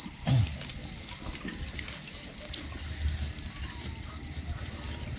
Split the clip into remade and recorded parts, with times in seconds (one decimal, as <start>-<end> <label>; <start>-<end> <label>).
0.0-5.2 recorded